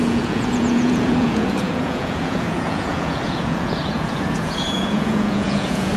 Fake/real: fake